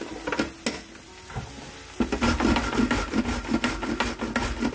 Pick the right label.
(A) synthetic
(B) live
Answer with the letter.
B